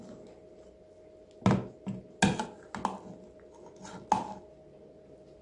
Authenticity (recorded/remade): recorded